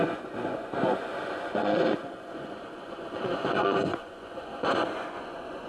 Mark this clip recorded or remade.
remade